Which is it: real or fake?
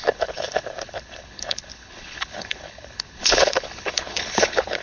fake